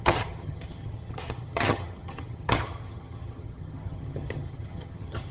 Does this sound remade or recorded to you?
remade